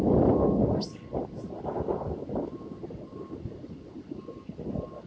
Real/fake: real